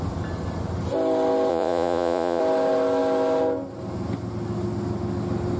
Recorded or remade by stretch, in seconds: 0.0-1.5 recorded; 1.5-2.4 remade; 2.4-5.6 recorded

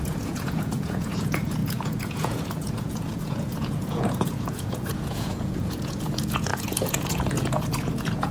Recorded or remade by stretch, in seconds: 0.0-8.3 remade

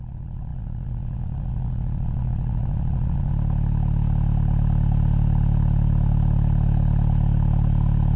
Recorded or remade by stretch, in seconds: 0.0-3.3 remade; 3.3-8.2 recorded

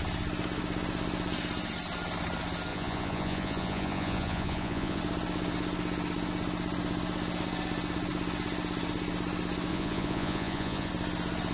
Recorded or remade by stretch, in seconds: 0.0-2.7 recorded; 2.7-5.0 remade; 5.0-9.7 recorded; 9.7-10.9 remade; 10.9-11.5 recorded

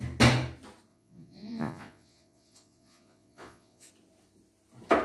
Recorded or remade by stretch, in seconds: 0.0-0.9 recorded; 0.9-3.9 remade; 3.9-5.0 recorded